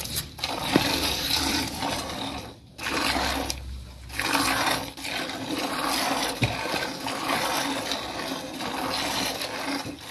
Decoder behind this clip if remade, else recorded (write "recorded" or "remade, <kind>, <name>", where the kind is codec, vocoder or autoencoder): recorded